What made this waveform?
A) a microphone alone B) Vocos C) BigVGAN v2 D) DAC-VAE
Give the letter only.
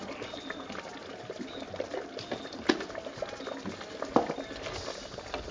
A